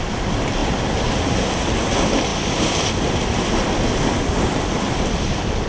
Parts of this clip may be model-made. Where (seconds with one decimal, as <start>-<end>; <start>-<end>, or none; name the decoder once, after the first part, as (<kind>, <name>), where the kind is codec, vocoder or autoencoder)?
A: none